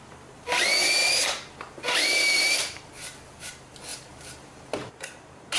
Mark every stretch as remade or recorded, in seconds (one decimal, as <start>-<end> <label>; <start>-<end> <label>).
0.0-1.0 recorded; 1.0-2.9 remade; 2.9-3.9 recorded; 3.9-5.6 remade